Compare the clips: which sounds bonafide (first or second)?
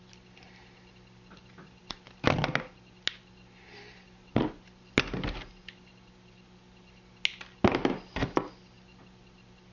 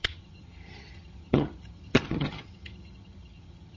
first